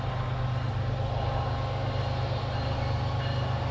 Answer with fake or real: real